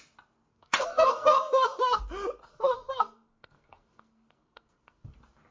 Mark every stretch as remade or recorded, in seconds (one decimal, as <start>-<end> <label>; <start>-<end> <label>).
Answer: 0.0-0.5 recorded; 0.5-2.0 remade; 2.0-2.5 recorded; 2.5-5.1 remade; 5.1-5.5 recorded